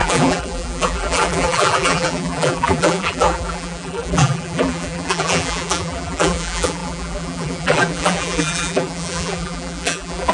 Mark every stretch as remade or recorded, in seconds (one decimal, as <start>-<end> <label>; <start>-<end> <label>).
0.0-10.3 remade